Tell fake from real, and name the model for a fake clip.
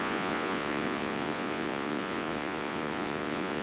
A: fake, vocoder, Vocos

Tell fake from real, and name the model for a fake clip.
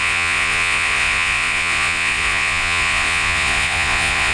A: fake, vocoder, Vocos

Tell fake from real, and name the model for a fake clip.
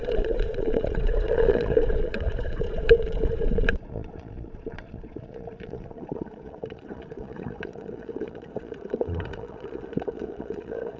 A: fake, vocoder, Vocos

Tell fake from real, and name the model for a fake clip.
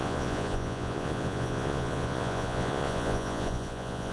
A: fake, vocoder, Vocos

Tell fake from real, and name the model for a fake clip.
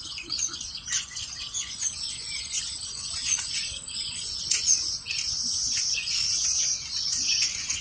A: fake, vocoder, Vocos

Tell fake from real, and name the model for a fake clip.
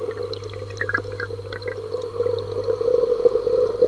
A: real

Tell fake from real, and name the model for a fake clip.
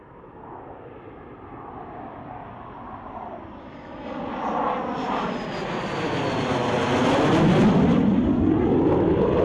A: real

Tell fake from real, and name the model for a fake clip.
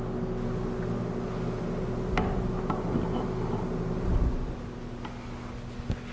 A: real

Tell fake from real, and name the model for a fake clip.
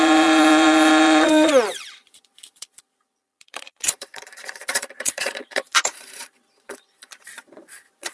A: fake, vocoder, Vocos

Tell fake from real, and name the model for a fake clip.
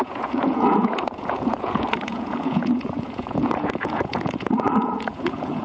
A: fake, vocoder, Vocos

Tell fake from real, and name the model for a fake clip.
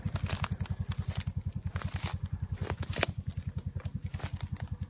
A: real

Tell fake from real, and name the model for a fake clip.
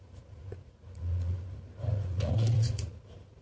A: fake, vocoder, Vocos